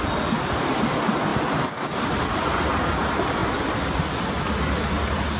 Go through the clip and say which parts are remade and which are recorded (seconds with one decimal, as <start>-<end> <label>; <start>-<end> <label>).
0.0-5.4 recorded